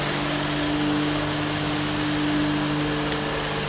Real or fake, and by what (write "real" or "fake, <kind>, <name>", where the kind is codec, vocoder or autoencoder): real